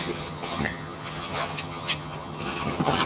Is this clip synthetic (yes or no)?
yes